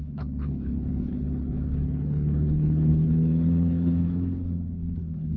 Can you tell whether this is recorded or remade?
remade